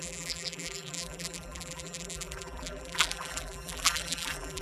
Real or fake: fake